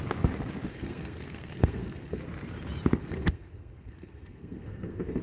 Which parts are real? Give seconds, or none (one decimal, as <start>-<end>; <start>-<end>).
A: 0.0-0.7; 2.2-3.0